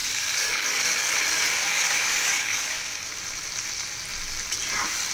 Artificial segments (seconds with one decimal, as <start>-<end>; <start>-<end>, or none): 0.0-1.2; 1.6-3.1

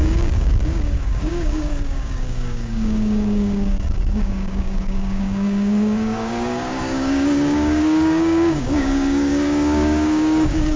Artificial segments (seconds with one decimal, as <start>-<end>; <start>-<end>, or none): 0.0-10.8

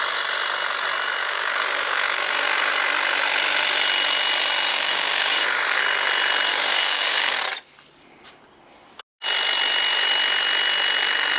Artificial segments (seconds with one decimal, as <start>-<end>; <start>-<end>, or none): 1.2-2.7; 4.7-5.8; 6.5-7.3

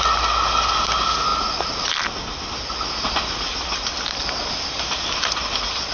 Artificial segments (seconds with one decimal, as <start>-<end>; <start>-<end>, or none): none